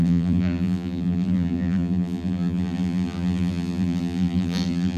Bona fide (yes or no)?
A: no